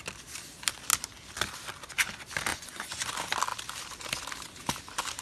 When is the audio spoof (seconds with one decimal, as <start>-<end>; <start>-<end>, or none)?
2.5-3.1